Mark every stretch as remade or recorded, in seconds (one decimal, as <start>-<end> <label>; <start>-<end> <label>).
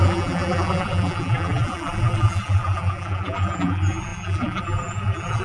0.0-5.4 remade